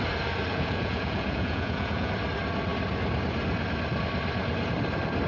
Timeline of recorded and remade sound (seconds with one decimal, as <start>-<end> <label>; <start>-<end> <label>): 0.0-0.5 recorded; 0.5-2.1 remade; 2.1-5.3 recorded